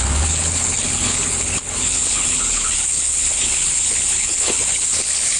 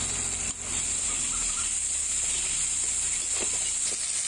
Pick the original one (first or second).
second